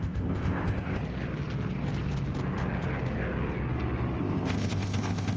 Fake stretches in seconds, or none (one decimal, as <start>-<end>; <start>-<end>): 0.0-1.0; 4.2-5.4